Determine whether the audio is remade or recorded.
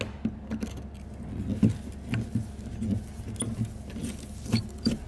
recorded